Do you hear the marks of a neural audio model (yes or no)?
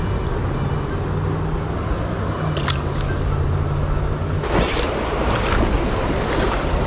no